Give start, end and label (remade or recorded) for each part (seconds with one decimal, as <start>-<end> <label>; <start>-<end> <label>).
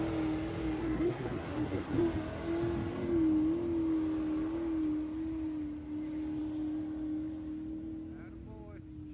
0.0-0.8 recorded; 0.8-2.0 remade; 2.0-9.1 recorded